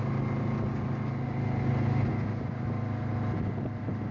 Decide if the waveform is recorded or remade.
recorded